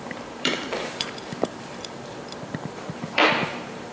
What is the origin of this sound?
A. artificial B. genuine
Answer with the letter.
A